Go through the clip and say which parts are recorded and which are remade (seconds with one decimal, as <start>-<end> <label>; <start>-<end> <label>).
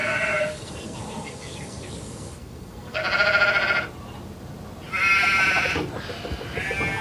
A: 0.0-3.0 remade; 3.0-7.0 recorded